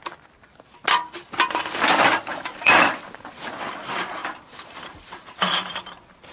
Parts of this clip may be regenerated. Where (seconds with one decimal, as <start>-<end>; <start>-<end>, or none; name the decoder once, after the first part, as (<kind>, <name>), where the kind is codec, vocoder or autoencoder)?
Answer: 2.3-2.9 (vocoder, BigVGAN v2); 4.2-5.8